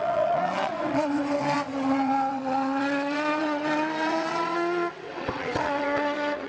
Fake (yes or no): yes